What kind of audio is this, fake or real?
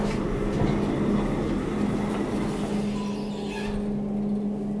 real